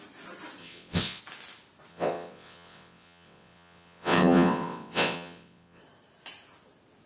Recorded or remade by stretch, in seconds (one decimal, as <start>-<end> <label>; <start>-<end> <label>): 0.0-0.6 recorded; 0.6-1.2 remade; 1.2-1.9 recorded; 1.9-5.8 remade; 5.8-7.1 recorded